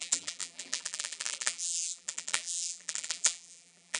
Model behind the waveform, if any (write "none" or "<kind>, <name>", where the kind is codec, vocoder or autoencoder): vocoder, BigVGAN v2